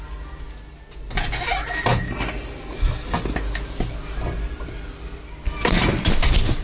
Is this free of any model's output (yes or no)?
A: yes